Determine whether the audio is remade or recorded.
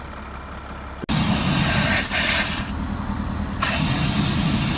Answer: recorded